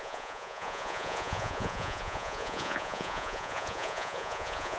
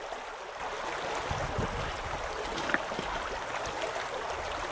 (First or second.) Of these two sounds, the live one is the second